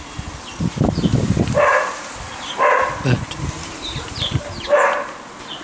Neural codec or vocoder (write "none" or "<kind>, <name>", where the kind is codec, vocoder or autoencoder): vocoder, BigVGAN v2